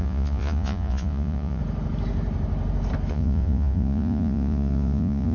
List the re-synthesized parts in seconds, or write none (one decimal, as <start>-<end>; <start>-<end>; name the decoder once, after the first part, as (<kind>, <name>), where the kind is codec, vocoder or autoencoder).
0.0-1.6 (vocoder, Vocos); 3.1-5.3